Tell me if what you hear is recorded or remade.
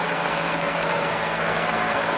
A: remade